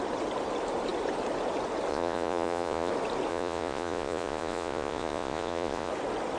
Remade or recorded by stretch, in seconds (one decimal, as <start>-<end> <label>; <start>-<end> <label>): 0.0-1.9 recorded; 1.9-2.9 remade; 2.9-3.3 recorded; 3.3-5.9 remade; 5.9-6.4 recorded